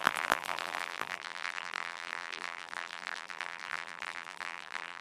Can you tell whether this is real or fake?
fake